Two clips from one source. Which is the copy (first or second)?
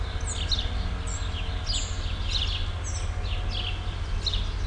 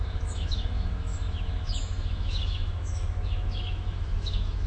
second